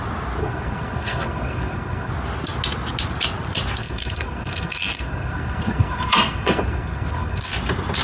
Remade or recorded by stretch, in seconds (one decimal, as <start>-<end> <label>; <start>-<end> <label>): 0.0-0.4 recorded; 0.4-2.1 remade; 2.1-3.8 recorded; 3.8-7.4 remade; 7.4-8.0 recorded

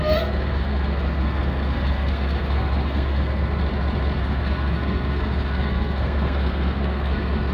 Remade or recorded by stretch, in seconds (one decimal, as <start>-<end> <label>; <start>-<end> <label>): 0.0-3.6 remade; 3.6-4.2 recorded; 4.2-7.5 remade

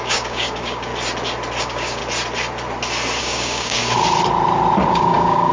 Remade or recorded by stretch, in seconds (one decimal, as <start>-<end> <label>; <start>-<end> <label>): 0.0-0.9 remade; 0.9-1.6 recorded; 1.6-2.0 remade; 2.0-3.2 recorded; 3.2-3.8 remade; 3.8-4.9 recorded; 4.9-5.5 remade

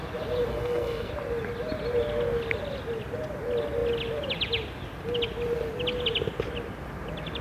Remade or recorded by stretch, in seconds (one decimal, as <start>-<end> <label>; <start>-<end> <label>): 0.0-0.5 recorded; 0.5-1.1 remade; 1.1-7.4 recorded

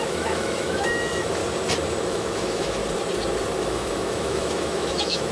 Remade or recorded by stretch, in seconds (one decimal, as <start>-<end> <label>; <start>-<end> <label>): 0.0-1.4 remade; 1.4-2.0 recorded; 2.0-2.8 remade; 2.8-3.6 recorded; 3.6-5.3 remade

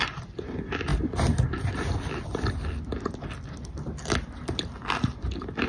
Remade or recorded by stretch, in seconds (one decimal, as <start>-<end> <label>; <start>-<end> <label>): 0.0-5.7 recorded